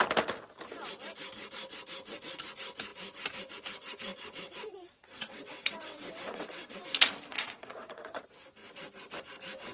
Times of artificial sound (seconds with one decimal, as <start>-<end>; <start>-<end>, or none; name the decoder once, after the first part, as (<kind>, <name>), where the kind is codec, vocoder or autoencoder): 4.1-6.7 (vocoder, WaveNeXt); 7.3-8.2